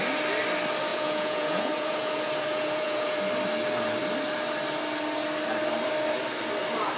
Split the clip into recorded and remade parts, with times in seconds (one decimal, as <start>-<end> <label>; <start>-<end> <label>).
0.0-0.9 recorded; 0.9-3.2 remade; 3.2-7.0 recorded